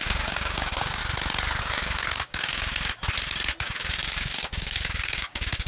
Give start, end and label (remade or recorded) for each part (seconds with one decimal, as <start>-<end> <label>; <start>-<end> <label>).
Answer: 0.0-1.0 remade; 1.0-1.6 recorded; 1.6-2.7 remade; 2.7-3.6 recorded; 3.6-5.7 remade